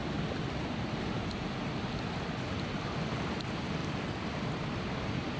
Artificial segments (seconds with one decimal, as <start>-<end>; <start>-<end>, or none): none